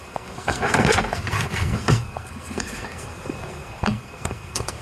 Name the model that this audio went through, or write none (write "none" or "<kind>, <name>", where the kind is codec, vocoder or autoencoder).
codec, SNAC